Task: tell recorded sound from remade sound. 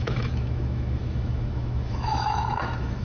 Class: remade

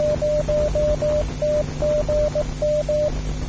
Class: recorded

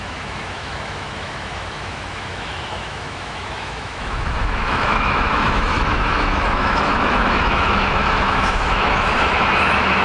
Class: remade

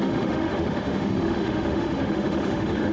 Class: remade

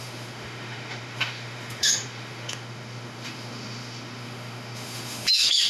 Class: remade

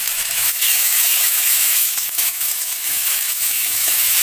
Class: remade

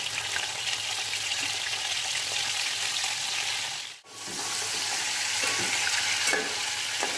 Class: recorded